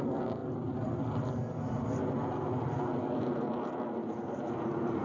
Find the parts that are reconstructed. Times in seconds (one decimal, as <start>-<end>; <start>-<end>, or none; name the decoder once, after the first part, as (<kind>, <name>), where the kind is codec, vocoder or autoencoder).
none